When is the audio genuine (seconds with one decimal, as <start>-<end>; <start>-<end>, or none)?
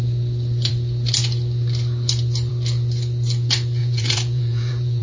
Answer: 0.0-3.8